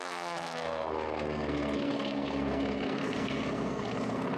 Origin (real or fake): fake